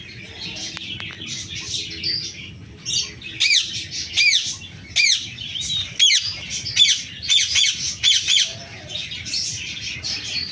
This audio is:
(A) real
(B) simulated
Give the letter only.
A